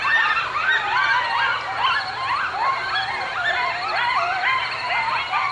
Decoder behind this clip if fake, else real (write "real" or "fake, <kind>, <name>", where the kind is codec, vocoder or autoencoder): real